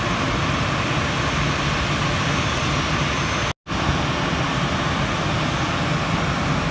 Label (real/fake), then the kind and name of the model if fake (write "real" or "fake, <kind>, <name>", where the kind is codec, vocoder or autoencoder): real